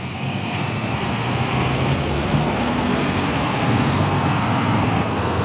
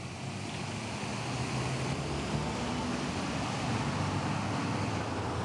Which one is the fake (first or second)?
first